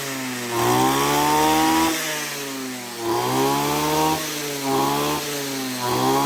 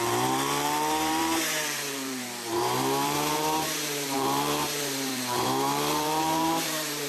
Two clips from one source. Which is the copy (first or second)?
second